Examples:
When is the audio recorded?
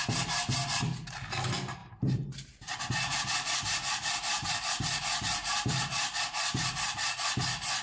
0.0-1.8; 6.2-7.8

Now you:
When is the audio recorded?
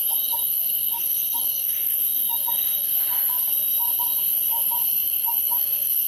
2.9-4.9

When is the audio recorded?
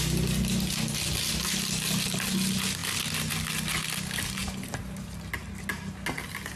0.0-6.6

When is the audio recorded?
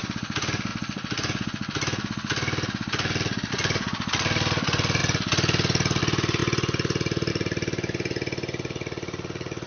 0.0-9.7